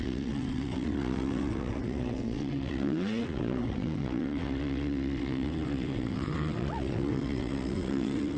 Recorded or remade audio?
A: remade